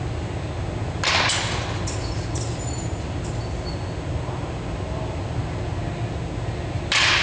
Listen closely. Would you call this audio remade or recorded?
recorded